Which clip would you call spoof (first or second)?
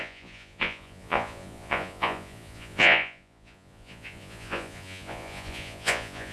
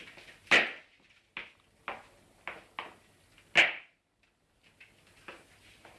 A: first